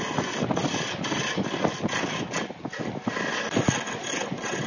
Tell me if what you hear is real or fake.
real